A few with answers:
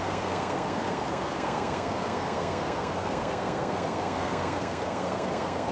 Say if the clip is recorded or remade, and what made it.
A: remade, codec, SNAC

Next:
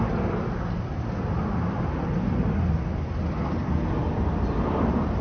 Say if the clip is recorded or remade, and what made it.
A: recorded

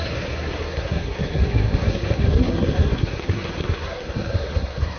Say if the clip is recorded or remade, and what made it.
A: remade, codec, SNAC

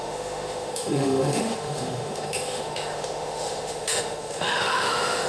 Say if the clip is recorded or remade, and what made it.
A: remade, autoencoder, DAC-VAE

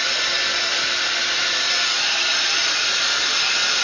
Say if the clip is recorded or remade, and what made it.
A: recorded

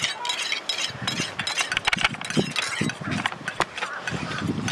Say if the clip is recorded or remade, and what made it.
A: recorded